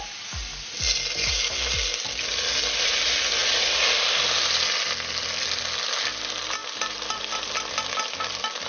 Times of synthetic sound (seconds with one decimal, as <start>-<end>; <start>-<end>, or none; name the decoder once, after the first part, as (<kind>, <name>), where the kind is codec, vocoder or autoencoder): 6.6-7.8 (vocoder, BigVGAN v2)